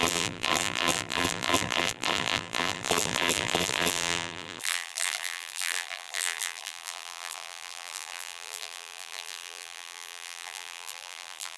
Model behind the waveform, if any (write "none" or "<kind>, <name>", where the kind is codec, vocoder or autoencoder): vocoder, BigVGAN v2